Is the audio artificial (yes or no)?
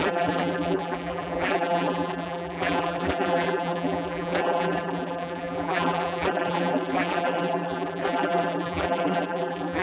yes